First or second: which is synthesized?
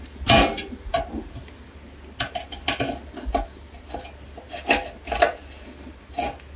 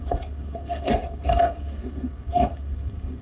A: second